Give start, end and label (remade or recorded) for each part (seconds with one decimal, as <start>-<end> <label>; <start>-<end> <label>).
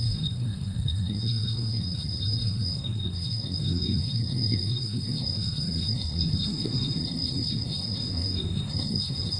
0.0-9.4 remade